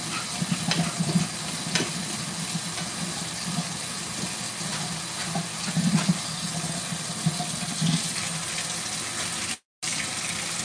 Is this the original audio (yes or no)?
yes